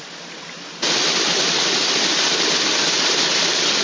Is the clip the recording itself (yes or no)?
yes